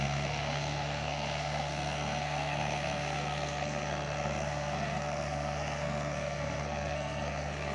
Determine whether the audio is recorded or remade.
remade